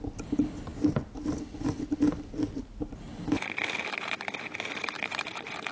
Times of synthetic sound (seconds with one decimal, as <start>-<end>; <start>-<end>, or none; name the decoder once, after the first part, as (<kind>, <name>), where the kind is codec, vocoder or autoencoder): none